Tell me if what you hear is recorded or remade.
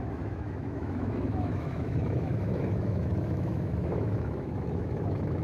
remade